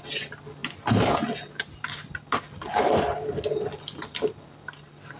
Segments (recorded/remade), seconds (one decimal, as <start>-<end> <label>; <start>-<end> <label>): 0.0-5.2 recorded